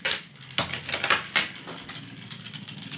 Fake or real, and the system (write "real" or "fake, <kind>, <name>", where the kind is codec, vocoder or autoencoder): real